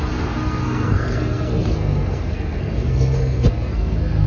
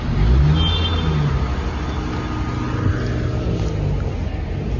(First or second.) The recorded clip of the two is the second